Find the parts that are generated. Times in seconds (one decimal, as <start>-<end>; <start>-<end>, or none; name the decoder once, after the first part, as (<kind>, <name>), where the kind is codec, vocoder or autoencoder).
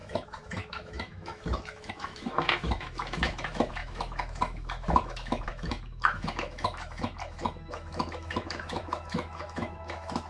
0.0-10.3 (autoencoder, DAC-VAE)